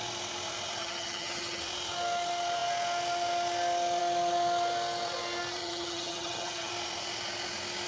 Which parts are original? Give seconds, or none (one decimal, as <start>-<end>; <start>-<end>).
0.0-0.8; 1.6-5.6; 6.7-7.9